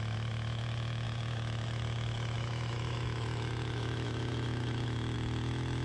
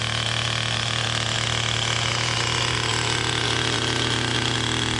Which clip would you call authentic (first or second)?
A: second